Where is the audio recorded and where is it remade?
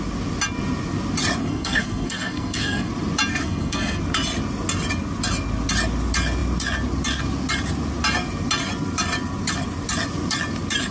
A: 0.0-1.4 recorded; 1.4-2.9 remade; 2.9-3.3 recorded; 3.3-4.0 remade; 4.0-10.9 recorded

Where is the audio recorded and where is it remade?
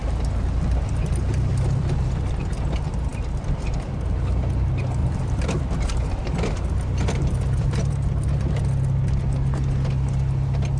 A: 0.0-2.5 remade; 2.5-3.1 recorded; 3.1-3.9 remade; 3.9-5.0 recorded; 5.0-7.9 remade; 7.9-10.8 recorded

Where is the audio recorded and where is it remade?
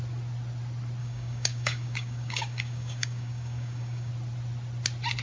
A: 0.0-1.0 recorded; 1.0-4.1 remade; 4.1-5.2 recorded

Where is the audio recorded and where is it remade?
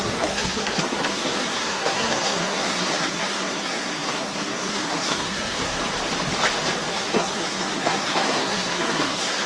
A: 0.0-5.8 remade; 5.8-6.9 recorded; 6.9-9.5 remade